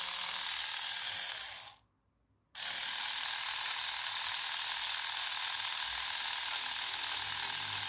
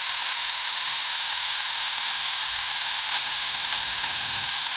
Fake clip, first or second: second